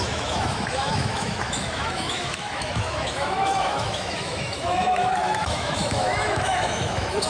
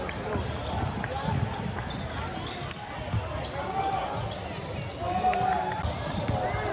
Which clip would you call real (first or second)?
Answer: second